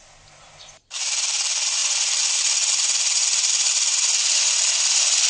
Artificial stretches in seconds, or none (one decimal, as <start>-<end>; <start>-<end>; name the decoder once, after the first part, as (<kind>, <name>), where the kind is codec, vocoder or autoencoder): none